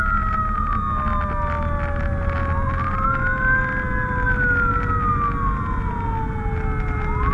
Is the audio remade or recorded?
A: recorded